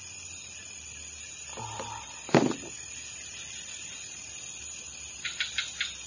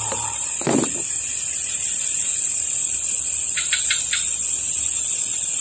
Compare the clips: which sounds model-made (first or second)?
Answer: second